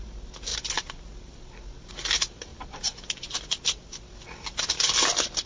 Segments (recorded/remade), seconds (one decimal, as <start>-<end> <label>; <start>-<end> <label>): 0.0-5.5 recorded